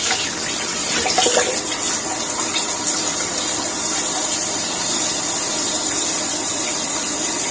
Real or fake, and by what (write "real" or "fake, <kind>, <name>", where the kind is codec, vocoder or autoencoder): real